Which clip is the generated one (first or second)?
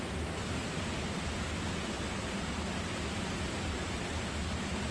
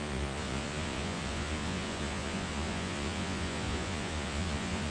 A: second